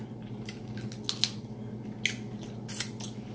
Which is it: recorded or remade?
recorded